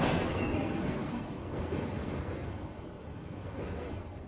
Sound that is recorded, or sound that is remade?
remade